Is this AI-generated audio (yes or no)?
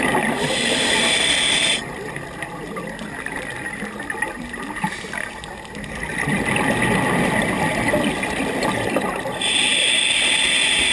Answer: no